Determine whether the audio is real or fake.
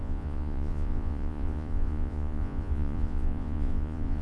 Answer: fake